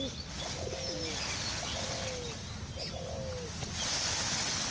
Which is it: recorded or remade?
recorded